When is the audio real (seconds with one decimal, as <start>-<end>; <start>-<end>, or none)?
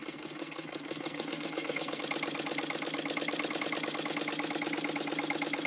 2.0-5.7